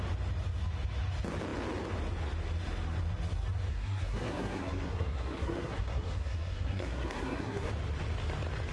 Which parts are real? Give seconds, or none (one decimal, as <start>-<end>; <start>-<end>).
0.0-3.7; 7.7-8.7